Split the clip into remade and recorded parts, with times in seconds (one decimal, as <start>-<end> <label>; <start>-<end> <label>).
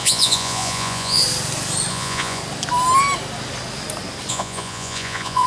0.0-1.2 remade; 1.2-1.9 recorded; 1.9-2.4 remade; 2.4-4.3 recorded; 4.3-5.5 remade